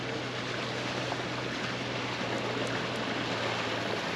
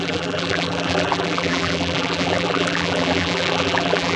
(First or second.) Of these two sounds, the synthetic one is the second